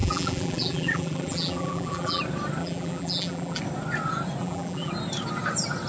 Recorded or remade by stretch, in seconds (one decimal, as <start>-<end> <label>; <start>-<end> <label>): 0.0-2.2 remade; 2.2-2.6 recorded; 2.6-3.6 remade; 3.6-4.4 recorded; 4.4-4.9 remade; 4.9-5.9 recorded